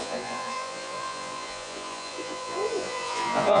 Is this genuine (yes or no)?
no